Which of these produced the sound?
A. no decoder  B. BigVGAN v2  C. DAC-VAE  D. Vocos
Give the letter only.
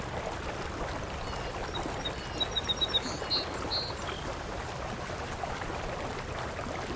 A